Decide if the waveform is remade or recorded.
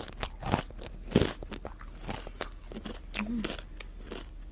recorded